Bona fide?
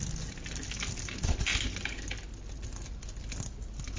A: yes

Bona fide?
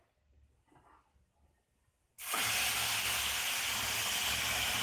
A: yes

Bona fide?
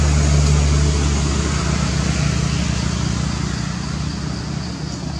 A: yes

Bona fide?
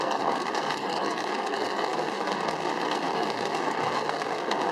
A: no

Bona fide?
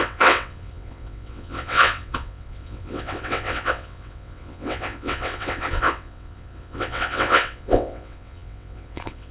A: no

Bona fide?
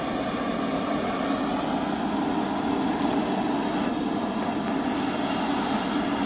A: yes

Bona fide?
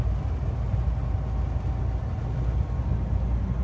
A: yes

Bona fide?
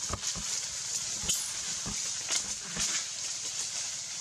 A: yes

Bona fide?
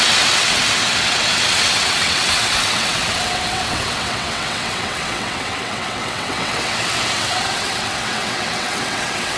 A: no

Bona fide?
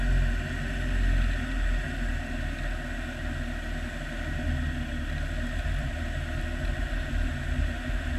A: yes